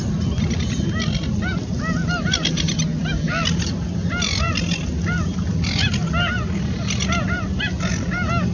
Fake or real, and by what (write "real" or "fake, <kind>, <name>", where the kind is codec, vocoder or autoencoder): real